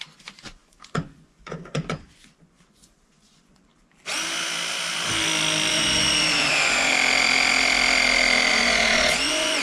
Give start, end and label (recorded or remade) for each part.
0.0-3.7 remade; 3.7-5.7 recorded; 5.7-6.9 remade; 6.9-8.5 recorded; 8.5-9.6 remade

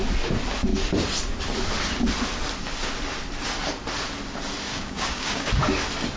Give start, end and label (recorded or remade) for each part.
0.0-4.7 recorded; 4.7-5.5 remade; 5.5-6.2 recorded

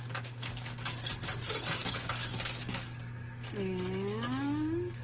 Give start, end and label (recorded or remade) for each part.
0.0-1.0 remade; 1.0-1.8 recorded; 1.8-5.0 remade